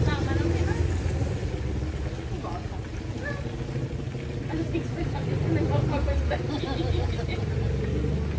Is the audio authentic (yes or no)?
yes